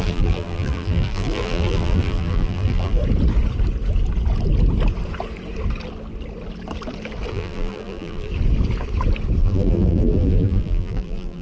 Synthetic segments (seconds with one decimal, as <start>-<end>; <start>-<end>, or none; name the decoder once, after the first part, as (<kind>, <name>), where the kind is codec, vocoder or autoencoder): 0.0-3.0 (vocoder, BigVGAN v2); 7.3-8.3; 9.4-11.4